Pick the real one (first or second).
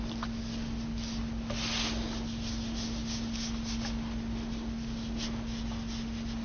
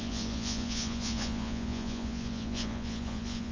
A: first